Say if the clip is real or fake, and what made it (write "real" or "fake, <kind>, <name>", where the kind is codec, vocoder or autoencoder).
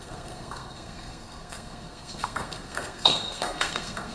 fake, codec, SNAC